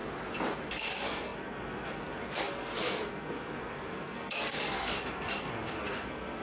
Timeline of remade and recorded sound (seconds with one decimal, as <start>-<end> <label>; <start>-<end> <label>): 0.0-0.7 recorded; 0.7-6.4 remade